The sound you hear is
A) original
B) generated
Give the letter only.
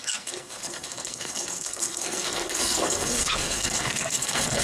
B